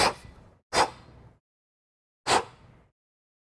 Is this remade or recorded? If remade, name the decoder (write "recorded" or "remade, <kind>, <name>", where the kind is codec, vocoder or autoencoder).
recorded